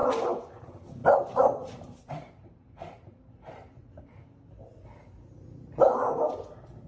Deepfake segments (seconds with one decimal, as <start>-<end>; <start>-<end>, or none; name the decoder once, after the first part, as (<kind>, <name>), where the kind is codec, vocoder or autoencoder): 1.0-4.0 (vocoder, BigVGAN v2)